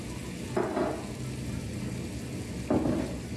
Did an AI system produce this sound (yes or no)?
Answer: no